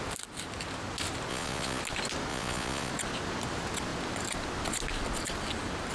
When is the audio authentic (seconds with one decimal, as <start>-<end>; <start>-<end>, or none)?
0.0-1.3; 1.8-2.3; 2.9-5.9